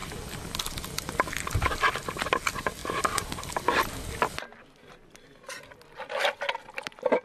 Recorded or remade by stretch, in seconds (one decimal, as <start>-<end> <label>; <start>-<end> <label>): 0.0-7.2 recorded